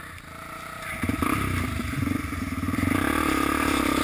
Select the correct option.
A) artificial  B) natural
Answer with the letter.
A